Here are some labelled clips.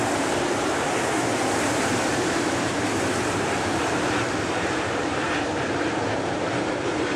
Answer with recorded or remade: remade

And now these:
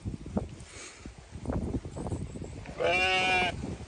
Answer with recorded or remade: recorded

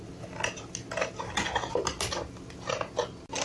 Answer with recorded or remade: recorded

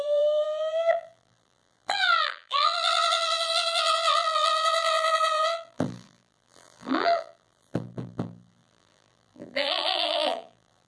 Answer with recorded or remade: remade